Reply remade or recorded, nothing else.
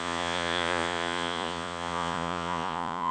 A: remade